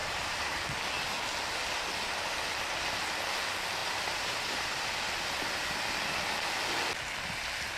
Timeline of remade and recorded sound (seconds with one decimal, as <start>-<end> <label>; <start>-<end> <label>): 0.0-0.6 remade; 0.6-3.8 recorded; 3.8-4.9 remade; 4.9-7.8 recorded